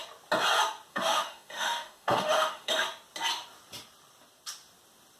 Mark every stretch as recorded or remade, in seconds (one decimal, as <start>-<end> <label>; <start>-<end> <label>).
0.0-0.9 recorded; 0.9-2.8 remade; 2.8-5.2 recorded